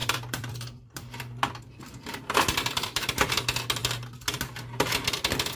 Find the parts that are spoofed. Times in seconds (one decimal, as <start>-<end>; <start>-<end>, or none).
0.0-3.3